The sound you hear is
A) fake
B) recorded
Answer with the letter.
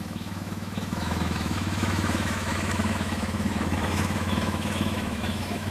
A